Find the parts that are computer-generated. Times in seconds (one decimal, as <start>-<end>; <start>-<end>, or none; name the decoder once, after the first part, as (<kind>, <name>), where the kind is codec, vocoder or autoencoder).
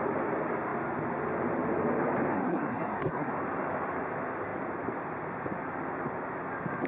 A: 2.3-3.3 (codec, SNAC)